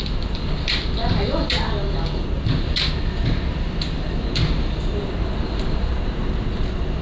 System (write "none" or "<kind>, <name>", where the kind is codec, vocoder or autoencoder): none